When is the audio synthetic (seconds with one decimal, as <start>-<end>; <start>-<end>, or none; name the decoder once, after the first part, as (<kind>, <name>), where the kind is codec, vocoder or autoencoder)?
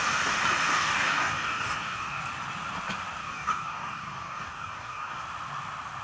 0.7-2.2 (codec, DAC); 3.2-5.2